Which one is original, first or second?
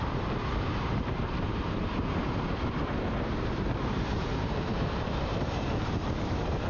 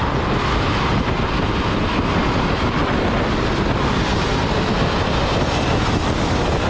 second